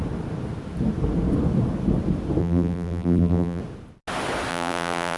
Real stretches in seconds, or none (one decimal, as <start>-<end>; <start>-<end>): 0.0-2.4; 3.6-4.5